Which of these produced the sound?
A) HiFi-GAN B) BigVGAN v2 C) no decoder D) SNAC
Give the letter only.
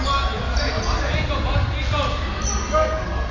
C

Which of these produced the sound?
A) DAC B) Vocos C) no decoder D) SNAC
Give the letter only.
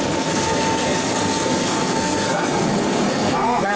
D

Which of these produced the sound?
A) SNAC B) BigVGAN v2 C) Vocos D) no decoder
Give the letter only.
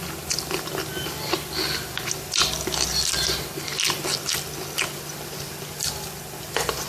D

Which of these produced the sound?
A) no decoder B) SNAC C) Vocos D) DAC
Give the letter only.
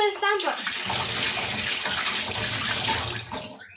A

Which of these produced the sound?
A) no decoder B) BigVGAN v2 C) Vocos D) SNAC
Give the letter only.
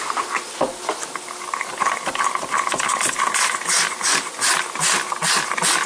A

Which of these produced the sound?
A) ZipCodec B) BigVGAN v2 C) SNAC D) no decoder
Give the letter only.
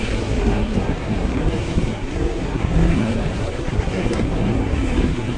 C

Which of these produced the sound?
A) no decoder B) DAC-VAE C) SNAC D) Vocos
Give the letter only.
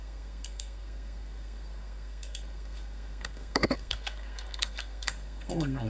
C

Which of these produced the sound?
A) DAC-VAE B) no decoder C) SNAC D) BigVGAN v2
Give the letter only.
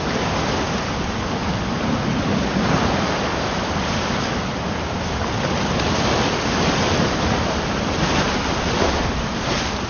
B